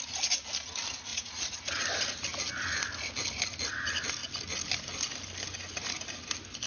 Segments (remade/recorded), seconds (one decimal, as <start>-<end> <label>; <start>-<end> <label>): 0.0-1.1 recorded; 1.1-1.8 remade; 1.8-6.7 recorded